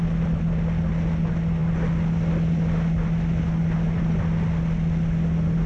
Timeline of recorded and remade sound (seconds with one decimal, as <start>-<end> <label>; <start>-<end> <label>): 0.0-5.7 recorded